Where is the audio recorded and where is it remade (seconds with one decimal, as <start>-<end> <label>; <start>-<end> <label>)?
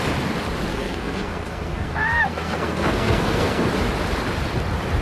0.0-0.7 recorded; 0.7-3.7 remade; 3.7-5.0 recorded